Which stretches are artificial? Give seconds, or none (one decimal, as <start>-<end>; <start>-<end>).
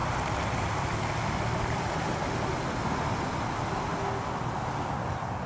none